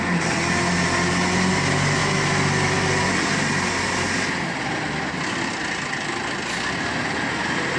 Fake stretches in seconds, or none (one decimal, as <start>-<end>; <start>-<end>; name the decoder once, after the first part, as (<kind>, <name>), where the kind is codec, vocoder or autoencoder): none